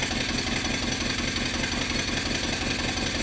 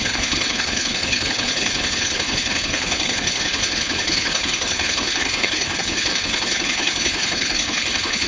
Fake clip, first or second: second